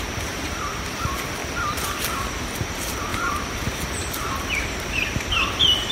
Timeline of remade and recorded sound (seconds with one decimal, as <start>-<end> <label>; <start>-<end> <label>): 0.0-5.9 recorded